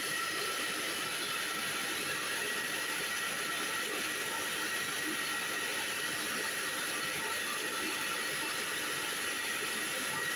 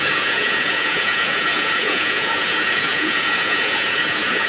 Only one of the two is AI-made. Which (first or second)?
second